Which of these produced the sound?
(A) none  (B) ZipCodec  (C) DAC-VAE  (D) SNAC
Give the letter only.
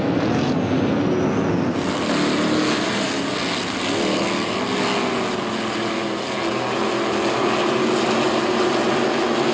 A